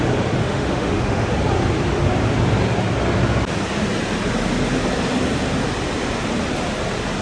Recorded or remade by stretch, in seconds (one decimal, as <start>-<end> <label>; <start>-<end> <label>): 0.0-0.4 recorded; 0.4-1.3 remade; 1.3-7.2 recorded